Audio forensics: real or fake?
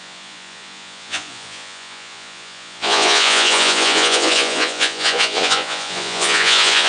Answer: fake